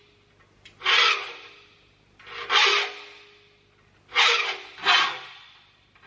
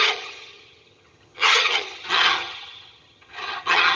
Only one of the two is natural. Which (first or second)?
first